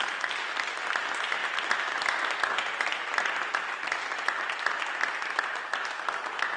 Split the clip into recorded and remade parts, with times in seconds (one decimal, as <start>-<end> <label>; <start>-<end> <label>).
0.0-1.4 remade; 1.4-5.4 recorded; 5.4-6.6 remade